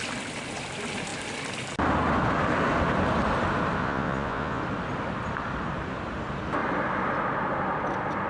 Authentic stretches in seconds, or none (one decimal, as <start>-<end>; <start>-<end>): 0.0-3.8; 4.6-8.3